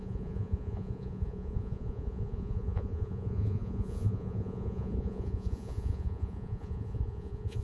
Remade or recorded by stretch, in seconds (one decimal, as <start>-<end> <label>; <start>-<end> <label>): 0.0-7.6 remade